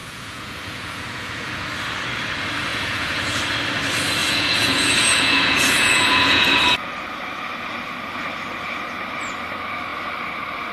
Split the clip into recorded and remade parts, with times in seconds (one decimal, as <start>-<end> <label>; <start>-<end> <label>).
0.0-1.6 remade; 1.6-2.7 recorded; 2.7-3.4 remade; 3.4-4.2 recorded; 4.2-6.9 remade; 6.9-10.7 recorded